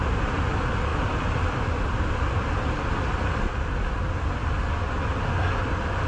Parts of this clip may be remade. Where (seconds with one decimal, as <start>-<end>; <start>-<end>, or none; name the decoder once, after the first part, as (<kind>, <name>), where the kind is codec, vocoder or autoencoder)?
0.9-3.8 (vocoder, BigVGAN v2)